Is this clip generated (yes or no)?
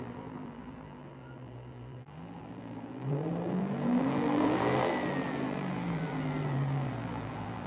yes